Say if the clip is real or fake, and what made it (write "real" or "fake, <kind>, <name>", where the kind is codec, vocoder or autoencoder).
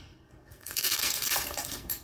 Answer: fake, codec, SNAC